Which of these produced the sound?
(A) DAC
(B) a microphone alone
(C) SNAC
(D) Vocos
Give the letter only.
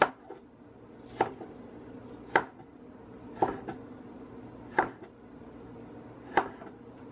B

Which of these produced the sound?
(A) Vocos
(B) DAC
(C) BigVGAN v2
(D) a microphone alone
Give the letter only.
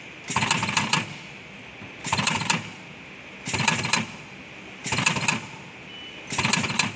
D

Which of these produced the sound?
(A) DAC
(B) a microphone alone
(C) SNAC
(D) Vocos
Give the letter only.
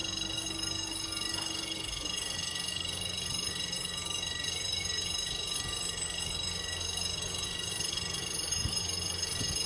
A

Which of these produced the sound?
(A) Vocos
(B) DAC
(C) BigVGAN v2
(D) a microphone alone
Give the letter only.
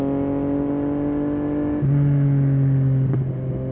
D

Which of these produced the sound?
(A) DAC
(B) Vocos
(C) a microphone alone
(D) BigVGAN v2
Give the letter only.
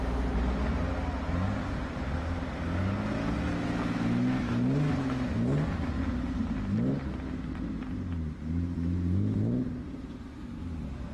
C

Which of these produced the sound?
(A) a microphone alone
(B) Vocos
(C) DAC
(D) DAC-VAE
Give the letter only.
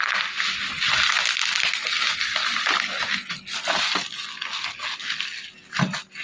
A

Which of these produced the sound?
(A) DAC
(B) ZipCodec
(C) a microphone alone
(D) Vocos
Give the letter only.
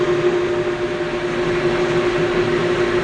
C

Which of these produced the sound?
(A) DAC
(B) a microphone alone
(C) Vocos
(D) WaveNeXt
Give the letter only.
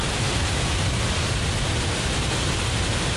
B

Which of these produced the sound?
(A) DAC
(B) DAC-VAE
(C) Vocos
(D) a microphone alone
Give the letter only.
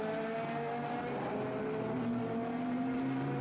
D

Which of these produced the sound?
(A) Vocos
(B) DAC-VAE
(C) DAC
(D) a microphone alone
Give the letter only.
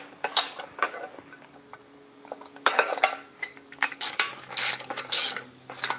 C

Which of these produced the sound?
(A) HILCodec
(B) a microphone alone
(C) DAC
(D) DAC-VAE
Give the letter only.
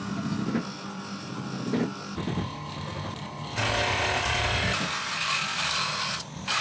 B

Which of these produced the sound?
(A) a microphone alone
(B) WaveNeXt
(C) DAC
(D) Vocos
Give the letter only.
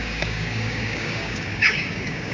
C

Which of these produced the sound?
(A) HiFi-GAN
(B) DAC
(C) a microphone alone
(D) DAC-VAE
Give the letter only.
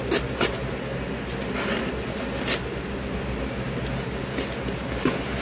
C